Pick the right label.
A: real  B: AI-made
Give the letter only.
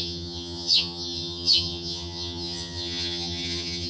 B